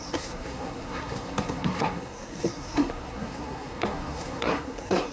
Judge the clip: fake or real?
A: fake